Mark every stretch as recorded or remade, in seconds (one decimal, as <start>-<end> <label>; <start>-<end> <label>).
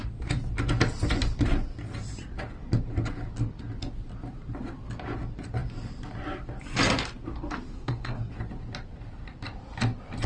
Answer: 0.0-7.7 recorded; 7.7-8.3 remade; 8.3-10.3 recorded